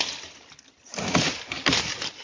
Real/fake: fake